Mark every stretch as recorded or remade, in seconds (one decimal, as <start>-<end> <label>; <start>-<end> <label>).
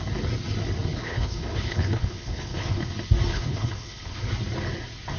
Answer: 0.0-0.9 recorded; 0.9-2.9 remade; 2.9-3.3 recorded; 3.3-4.3 remade; 4.3-5.2 recorded